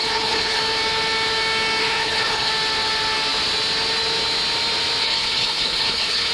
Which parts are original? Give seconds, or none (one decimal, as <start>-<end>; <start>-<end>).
0.6-1.8; 2.5-5.0